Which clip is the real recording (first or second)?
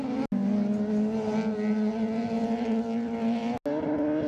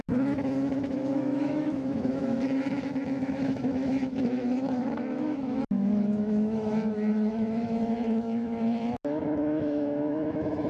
first